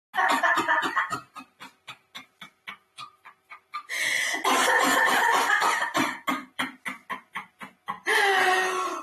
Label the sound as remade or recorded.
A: recorded